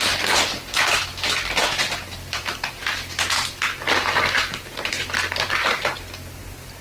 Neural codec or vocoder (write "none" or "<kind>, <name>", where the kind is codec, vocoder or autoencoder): none